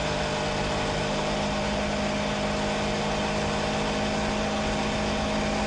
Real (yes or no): yes